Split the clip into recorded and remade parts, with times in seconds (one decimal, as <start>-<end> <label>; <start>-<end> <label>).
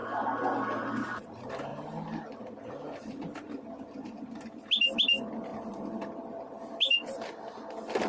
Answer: 0.0-0.8 remade; 0.8-8.1 recorded